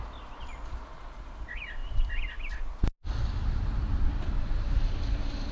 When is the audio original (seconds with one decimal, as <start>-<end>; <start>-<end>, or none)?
0.0-5.5